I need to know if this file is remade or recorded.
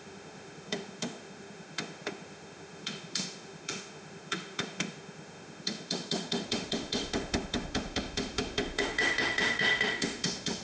remade